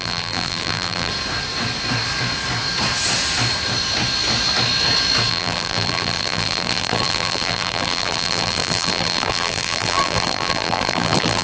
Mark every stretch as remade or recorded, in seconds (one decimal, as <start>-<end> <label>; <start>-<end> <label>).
0.0-1.1 remade; 1.1-5.3 recorded; 5.3-11.4 remade